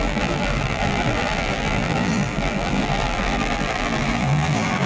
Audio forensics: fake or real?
fake